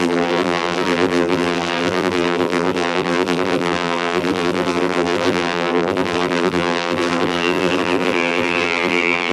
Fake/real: fake